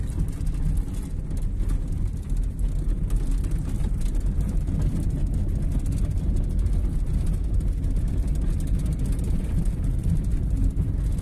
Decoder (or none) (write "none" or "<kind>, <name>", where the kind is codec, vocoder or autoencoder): none